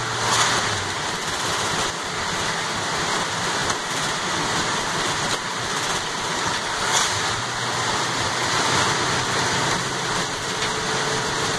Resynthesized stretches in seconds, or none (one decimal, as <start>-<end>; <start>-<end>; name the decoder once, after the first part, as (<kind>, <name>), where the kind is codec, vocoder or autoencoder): 3.6-4.9 (vocoder, BigVGAN v2)